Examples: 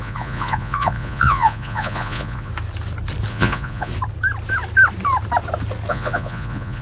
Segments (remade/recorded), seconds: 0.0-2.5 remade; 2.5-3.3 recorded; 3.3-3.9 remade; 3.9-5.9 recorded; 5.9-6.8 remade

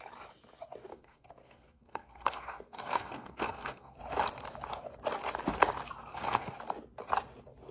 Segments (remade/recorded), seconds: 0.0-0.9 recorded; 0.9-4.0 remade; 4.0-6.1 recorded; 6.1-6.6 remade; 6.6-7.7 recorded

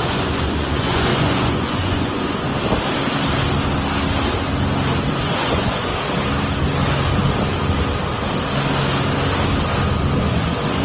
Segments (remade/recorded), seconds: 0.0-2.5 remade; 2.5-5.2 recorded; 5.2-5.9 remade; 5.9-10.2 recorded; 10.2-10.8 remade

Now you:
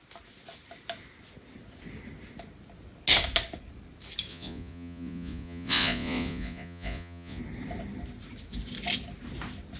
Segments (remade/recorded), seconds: 0.0-4.3 recorded; 4.3-7.4 remade; 7.4-9.8 recorded

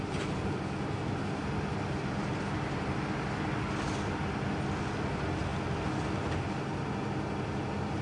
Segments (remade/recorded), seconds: 0.0-8.0 recorded

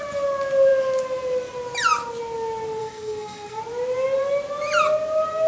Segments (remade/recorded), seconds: 0.0-2.8 recorded; 2.8-3.6 remade; 3.6-5.5 recorded

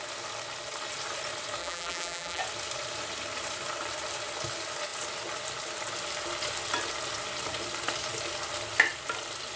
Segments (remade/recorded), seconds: 0.0-1.6 recorded; 1.6-2.4 remade; 2.4-9.6 recorded

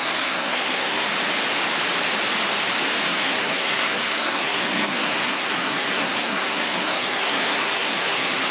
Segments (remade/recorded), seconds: 0.0-1.1 remade; 1.1-3.1 recorded; 3.1-8.5 remade